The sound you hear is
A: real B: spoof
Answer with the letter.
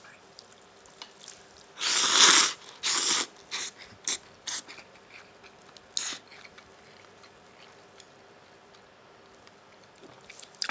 A